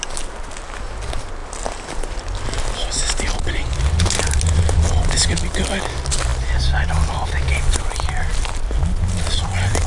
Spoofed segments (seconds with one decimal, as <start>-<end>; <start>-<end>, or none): none